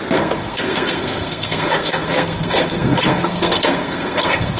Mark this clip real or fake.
fake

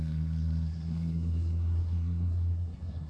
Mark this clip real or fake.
fake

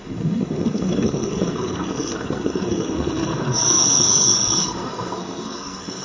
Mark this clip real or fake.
fake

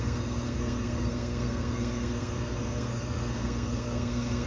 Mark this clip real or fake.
fake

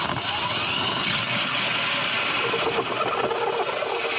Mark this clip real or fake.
real